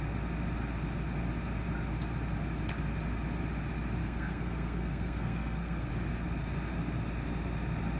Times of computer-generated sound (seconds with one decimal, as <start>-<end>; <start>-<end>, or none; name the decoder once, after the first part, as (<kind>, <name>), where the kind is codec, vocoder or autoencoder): 4.0-5.9 (codec, SNAC)

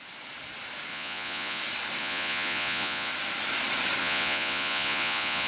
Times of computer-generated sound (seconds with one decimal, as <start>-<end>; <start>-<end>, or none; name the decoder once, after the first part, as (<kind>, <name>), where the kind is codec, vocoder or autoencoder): 0.9-1.6 (vocoder, Vocos); 2.0-3.1; 4.0-5.5

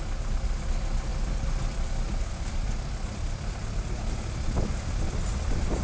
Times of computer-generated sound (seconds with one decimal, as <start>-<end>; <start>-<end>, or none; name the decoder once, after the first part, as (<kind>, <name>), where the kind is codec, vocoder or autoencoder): none

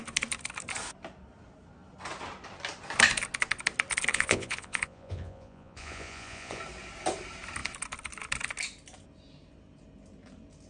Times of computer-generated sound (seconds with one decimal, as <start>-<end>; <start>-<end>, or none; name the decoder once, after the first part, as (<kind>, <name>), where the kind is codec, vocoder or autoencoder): 4.1-6.6 (vocoder, Vocos)